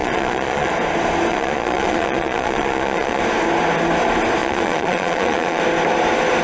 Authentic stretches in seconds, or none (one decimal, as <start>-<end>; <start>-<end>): 0.7-1.3; 3.2-4.4; 5.6-6.4

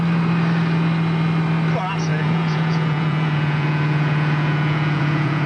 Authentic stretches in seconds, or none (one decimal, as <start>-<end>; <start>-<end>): 0.0-2.1

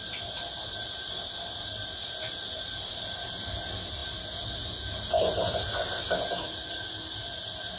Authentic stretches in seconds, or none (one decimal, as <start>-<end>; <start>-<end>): 0.0-7.8

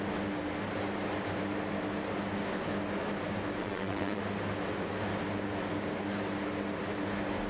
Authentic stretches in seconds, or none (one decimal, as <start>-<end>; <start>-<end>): 0.0-3.6; 4.2-7.5